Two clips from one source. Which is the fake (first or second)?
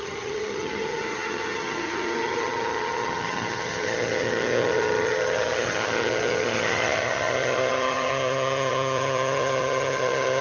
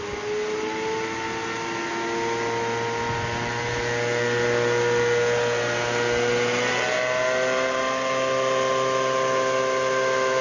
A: first